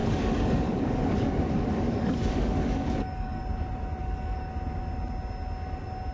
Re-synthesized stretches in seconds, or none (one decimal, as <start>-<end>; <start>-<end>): 0.0-3.4; 4.0-4.5